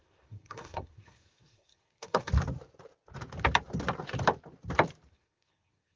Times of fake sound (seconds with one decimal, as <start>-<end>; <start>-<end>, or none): 0.0-2.3; 5.1-6.0